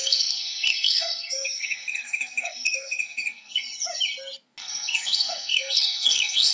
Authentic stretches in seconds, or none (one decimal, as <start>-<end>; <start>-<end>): 3.6-4.6